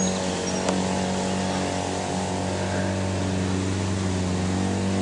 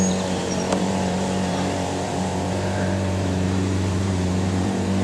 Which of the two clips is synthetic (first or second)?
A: second